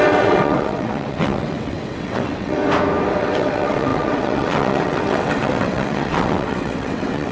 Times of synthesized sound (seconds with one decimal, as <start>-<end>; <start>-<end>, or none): 0.0-2.6; 3.2-7.3